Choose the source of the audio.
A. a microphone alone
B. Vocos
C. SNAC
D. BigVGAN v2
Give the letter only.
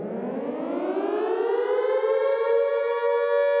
A